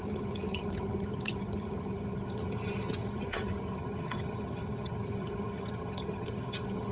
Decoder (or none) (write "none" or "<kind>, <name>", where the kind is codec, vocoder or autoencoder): vocoder, HiFi-GAN